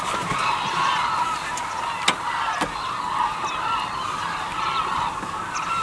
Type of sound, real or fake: real